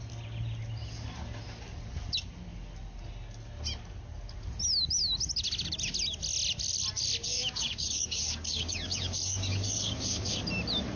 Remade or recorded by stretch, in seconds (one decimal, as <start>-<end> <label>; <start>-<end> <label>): 0.0-7.2 recorded; 7.2-10.4 remade; 10.4-11.0 recorded